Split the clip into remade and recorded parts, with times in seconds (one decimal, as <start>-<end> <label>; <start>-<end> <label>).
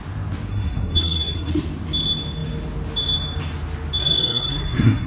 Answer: 0.0-0.5 recorded; 0.5-1.5 remade; 1.5-4.0 recorded; 4.0-5.1 remade